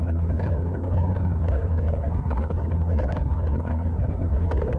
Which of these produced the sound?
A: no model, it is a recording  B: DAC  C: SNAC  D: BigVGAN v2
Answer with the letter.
C